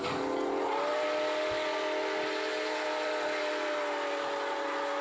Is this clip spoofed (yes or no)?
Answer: no